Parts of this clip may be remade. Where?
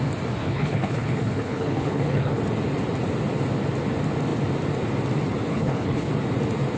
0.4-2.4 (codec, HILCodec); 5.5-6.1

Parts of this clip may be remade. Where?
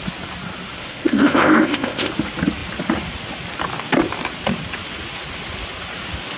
0.8-2.1 (codec, ZipCodec)